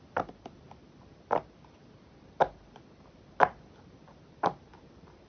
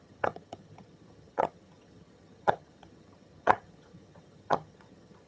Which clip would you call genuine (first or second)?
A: first